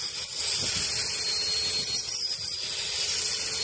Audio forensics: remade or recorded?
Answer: recorded